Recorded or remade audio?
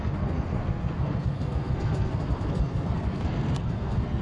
remade